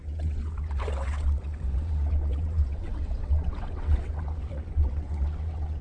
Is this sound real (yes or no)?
no